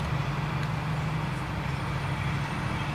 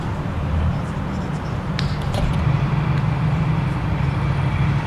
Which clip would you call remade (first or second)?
second